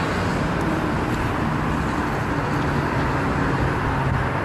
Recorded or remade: recorded